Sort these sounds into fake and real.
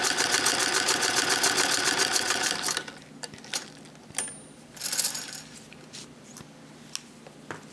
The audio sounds real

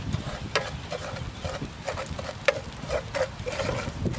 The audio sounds fake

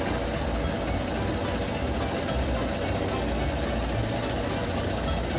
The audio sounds real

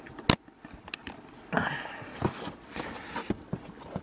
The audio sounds real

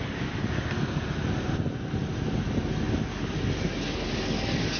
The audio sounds real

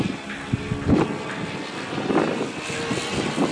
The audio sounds real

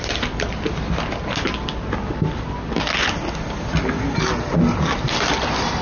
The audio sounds real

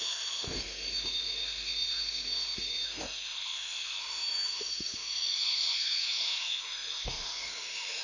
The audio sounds fake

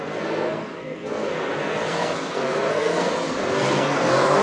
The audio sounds fake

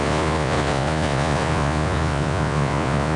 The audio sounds fake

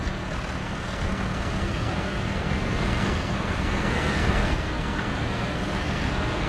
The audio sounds fake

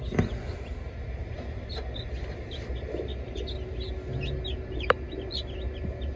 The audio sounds real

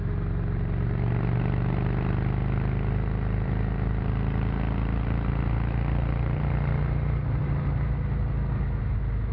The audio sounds real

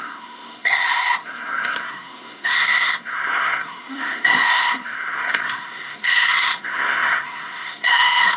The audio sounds fake